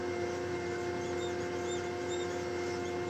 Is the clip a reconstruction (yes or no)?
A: no